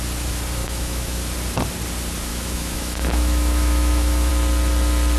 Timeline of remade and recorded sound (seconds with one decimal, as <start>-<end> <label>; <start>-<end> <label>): 0.0-0.6 recorded; 0.6-1.2 remade; 1.2-2.3 recorded; 2.3-4.3 remade; 4.3-5.2 recorded